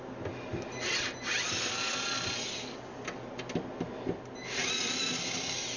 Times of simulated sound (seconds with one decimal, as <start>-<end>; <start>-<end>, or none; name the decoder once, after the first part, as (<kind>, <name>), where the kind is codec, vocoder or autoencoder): none